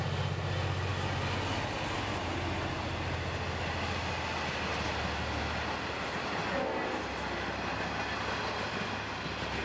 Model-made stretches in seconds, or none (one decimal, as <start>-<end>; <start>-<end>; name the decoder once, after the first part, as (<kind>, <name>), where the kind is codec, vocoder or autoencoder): none